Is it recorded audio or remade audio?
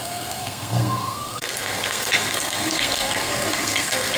remade